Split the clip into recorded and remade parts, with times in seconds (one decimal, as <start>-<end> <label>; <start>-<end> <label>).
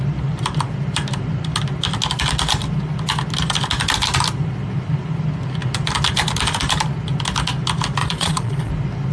0.0-8.0 recorded; 8.0-8.7 remade; 8.7-9.1 recorded